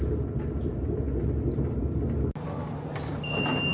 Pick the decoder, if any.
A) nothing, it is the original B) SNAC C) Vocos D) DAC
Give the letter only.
A